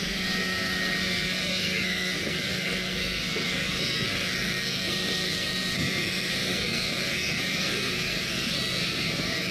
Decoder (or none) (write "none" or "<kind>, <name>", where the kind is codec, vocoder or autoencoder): codec, SNAC